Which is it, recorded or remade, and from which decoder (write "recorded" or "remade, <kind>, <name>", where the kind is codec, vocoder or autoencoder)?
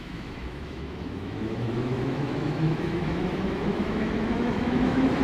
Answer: remade, autoencoder, DAC-VAE